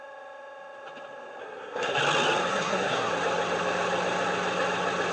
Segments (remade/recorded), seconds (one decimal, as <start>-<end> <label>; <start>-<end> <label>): 0.0-1.4 recorded; 1.4-2.0 remade; 2.0-2.5 recorded; 2.5-3.1 remade; 3.1-5.1 recorded